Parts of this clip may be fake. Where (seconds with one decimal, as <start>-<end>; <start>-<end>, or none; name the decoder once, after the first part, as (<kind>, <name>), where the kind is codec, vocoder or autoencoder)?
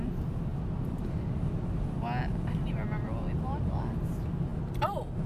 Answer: none